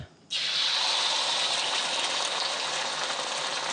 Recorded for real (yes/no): yes